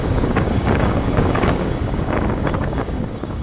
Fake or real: fake